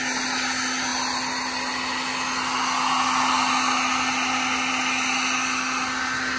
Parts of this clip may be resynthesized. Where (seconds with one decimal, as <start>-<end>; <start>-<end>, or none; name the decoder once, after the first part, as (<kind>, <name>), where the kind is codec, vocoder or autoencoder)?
none